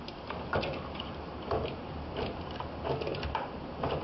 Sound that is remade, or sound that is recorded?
recorded